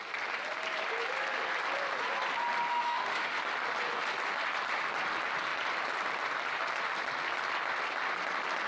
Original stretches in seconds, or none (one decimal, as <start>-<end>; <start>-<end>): 0.0-2.7; 3.4-8.7